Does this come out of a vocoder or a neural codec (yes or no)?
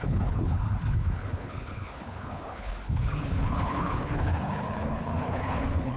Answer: yes